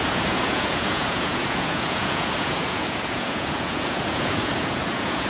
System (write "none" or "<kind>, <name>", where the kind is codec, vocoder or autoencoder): vocoder, Vocos